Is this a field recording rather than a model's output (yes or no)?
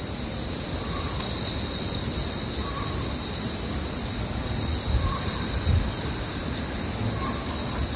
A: yes